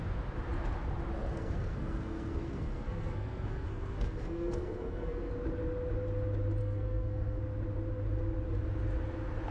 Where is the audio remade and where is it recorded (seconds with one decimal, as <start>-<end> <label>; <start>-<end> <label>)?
0.0-1.3 recorded; 1.3-5.3 remade; 5.3-6.6 recorded; 6.6-7.4 remade; 7.4-9.5 recorded